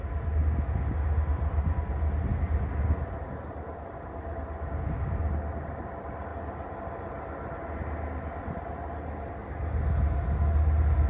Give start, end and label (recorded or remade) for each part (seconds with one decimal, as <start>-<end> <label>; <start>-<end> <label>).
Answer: 0.0-11.1 recorded